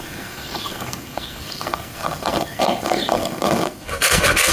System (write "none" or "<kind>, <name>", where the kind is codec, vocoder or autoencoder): codec, SNAC